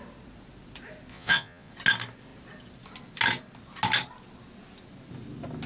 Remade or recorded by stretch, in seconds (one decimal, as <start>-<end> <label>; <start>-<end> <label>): 0.0-1.1 recorded; 1.1-1.7 remade; 1.7-5.7 recorded